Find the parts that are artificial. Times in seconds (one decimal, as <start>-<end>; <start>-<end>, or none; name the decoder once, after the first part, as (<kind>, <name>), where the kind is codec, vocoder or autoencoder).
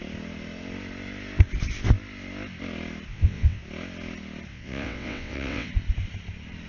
3.1-3.6 (vocoder, WaveNeXt); 4.5-5.7